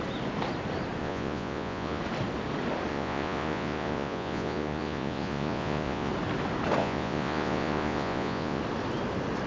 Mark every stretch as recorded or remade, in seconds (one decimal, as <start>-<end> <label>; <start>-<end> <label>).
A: 0.0-1.0 recorded; 1.0-2.0 remade; 2.0-2.9 recorded; 2.9-6.1 remade; 6.1-6.8 recorded; 6.8-8.6 remade; 8.6-9.5 recorded